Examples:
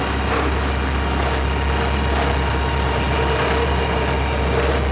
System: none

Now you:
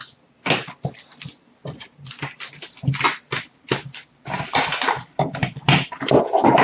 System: none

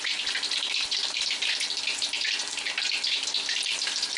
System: vocoder, BigVGAN v2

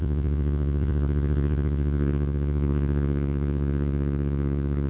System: vocoder, Vocos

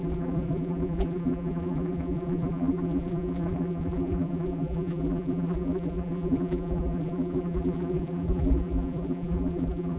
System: vocoder, BigVGAN v2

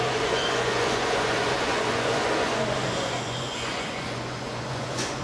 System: vocoder, Vocos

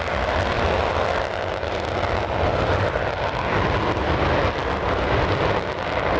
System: none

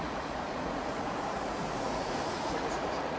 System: vocoder, Vocos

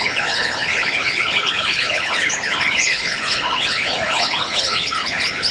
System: codec, HILCodec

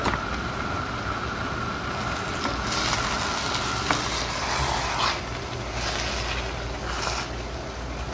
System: none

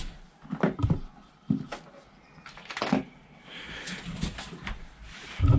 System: none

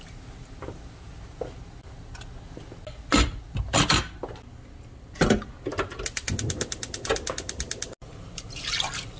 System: none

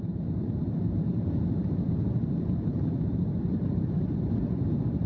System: vocoder, BigVGAN v2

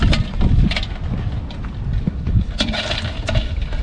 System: none